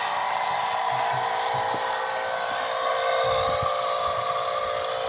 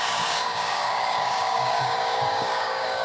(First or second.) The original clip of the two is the first